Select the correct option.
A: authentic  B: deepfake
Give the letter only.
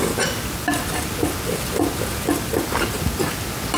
A